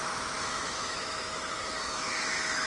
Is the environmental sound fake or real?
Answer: fake